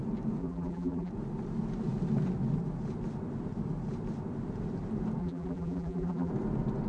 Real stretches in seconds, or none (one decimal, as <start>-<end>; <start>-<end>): 0.0-0.4; 1.1-5.2; 6.3-6.9